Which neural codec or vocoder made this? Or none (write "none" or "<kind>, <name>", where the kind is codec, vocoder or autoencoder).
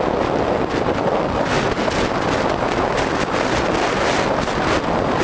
none